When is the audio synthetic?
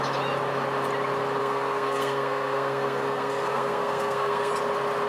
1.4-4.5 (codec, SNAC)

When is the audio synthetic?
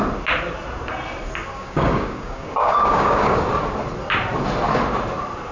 1.5-3.4 (codec, DAC)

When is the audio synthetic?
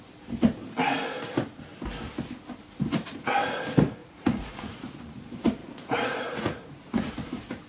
4.0-5.0 (vocoder, Vocos); 5.6-7.1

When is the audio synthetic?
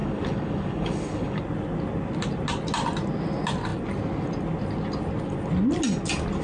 0.0-1.4 (codec, DAC)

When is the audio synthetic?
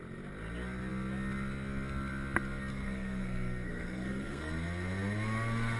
2.7-4.5 (codec, SNAC)